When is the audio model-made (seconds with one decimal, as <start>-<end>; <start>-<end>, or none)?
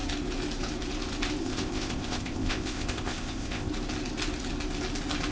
1.4-3.7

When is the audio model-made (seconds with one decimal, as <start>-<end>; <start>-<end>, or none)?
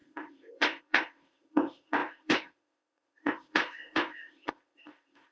0.0-5.3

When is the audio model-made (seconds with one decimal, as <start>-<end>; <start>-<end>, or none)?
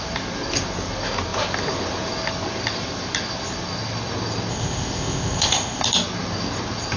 4.5-5.8